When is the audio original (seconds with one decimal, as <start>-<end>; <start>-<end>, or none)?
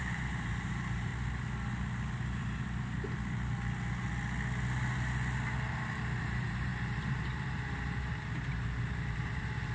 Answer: 1.1-6.2; 6.7-7.2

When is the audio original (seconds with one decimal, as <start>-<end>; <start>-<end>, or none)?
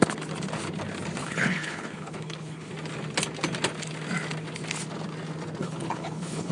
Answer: 0.0-1.2; 2.7-5.6